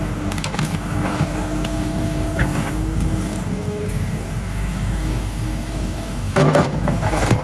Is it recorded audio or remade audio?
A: remade